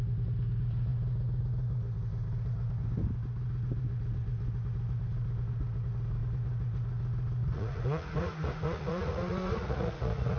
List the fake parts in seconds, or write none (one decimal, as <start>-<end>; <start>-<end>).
7.4-10.4